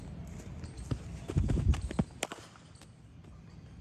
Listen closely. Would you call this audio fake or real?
real